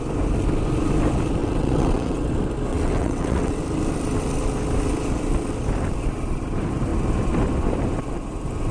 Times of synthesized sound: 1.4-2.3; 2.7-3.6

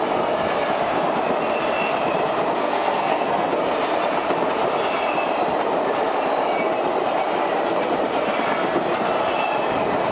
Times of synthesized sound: 2.6-3.5

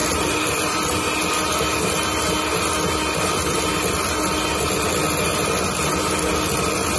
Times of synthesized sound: none